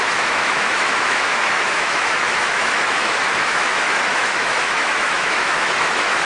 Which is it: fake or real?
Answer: fake